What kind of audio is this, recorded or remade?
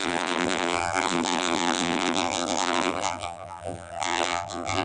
remade